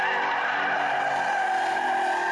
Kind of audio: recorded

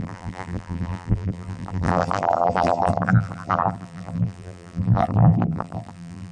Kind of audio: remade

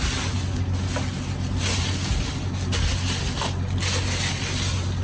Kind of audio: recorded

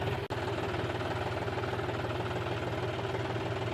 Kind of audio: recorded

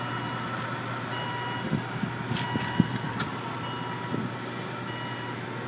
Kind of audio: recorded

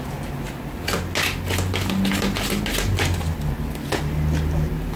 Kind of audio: recorded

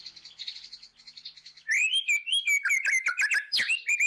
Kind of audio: remade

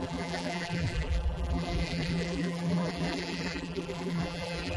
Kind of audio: remade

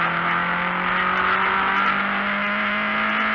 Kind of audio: recorded